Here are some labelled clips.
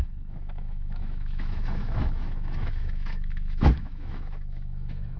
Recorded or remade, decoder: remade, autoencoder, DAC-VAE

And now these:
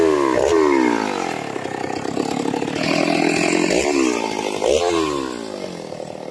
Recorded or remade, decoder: recorded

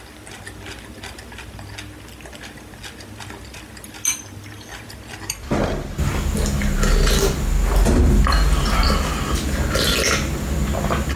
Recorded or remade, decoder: recorded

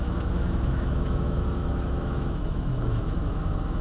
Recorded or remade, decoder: remade, autoencoder, DAC-VAE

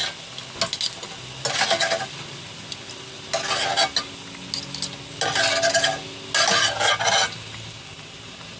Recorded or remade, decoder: recorded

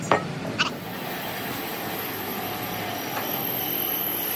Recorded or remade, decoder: recorded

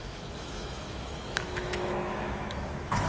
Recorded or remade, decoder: remade, autoencoder, DAC-VAE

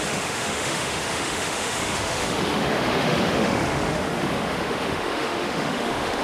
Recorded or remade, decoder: remade, autoencoder, DAC-VAE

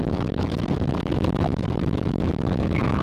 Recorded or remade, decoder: remade, autoencoder, DAC-VAE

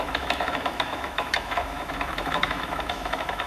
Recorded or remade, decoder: remade, autoencoder, DAC-VAE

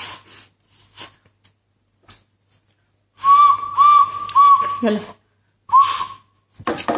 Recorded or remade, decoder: recorded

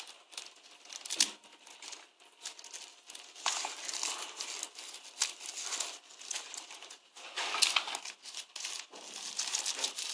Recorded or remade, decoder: recorded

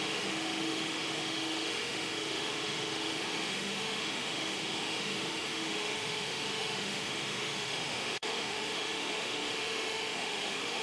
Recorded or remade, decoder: remade, autoencoder, DAC-VAE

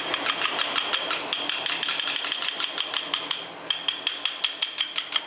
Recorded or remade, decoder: recorded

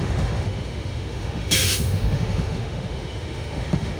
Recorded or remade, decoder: remade, autoencoder, DAC-VAE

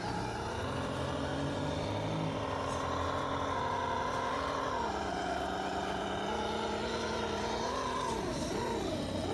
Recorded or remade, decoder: recorded